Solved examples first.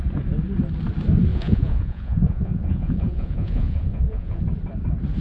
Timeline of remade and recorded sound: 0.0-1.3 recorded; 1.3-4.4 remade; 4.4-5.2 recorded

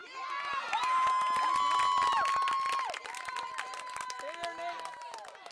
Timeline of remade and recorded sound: 0.0-5.5 recorded

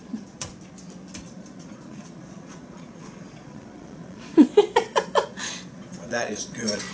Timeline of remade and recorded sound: 0.0-0.5 remade; 0.5-1.3 recorded; 1.3-6.9 remade

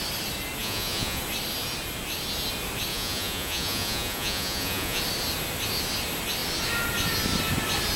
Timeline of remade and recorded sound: 0.0-0.6 recorded; 0.6-1.2 remade; 1.2-2.9 recorded; 2.9-5.0 remade; 5.0-8.0 recorded

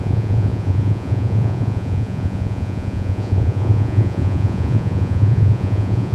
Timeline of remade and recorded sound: 0.0-6.1 remade